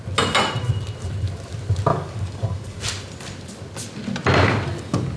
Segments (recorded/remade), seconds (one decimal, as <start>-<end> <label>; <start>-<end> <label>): 0.0-1.9 recorded; 1.9-2.8 remade; 2.8-5.2 recorded